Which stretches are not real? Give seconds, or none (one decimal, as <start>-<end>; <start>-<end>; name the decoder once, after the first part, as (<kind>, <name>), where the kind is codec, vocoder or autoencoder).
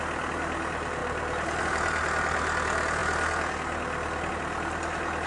none